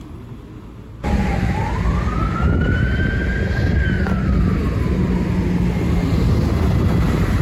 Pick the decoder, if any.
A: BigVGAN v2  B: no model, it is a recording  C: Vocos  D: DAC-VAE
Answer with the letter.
B